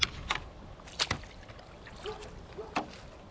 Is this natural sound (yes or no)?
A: yes